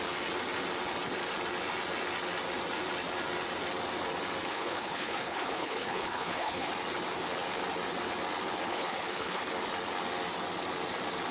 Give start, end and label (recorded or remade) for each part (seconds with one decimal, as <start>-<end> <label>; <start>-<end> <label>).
0.0-4.5 recorded; 4.5-6.7 remade; 6.7-8.7 recorded; 8.7-9.4 remade; 9.4-11.3 recorded

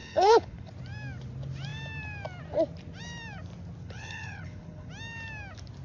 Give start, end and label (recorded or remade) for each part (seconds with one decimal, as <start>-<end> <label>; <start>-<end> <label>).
0.0-0.7 remade; 0.7-3.8 recorded; 3.8-4.9 remade; 4.9-5.8 recorded

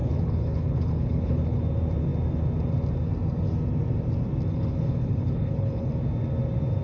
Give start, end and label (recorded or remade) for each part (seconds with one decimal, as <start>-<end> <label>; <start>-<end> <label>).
0.0-1.6 remade; 1.6-4.5 recorded; 4.5-5.9 remade; 5.9-6.8 recorded

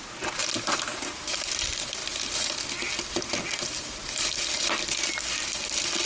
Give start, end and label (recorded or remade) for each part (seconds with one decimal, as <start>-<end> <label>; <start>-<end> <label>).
0.0-6.1 recorded